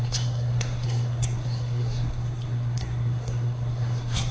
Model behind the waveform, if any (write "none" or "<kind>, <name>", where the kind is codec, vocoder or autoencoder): codec, SNAC